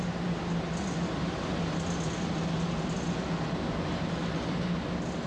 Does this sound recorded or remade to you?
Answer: recorded